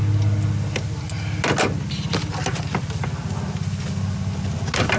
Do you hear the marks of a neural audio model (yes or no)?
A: no